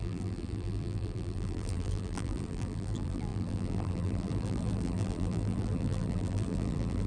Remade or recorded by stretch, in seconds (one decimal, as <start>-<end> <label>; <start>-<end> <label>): 0.0-7.1 remade